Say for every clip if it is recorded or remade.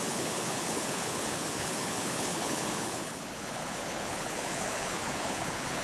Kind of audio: remade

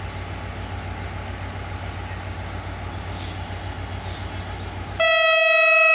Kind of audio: recorded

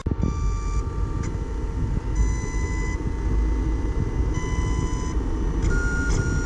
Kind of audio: recorded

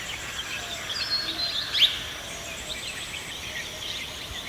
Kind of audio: recorded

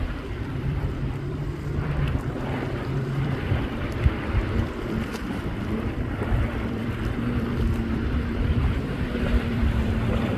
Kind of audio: remade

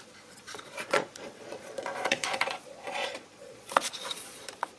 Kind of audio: remade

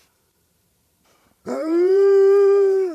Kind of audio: remade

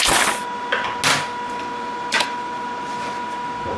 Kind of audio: recorded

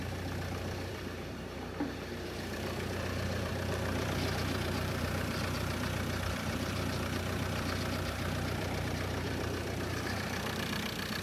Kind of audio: remade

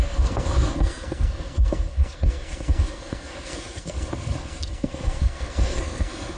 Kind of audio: remade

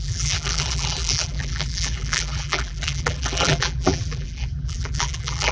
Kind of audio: remade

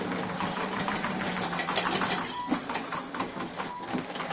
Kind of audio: recorded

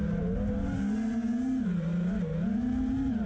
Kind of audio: recorded